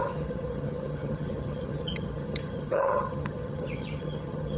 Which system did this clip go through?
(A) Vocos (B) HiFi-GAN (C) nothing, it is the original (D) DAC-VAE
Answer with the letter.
B